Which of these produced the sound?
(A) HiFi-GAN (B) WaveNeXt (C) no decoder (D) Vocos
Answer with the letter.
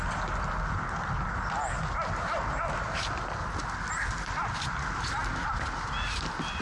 C